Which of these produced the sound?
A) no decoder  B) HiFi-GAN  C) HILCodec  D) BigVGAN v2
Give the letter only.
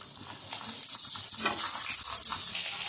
A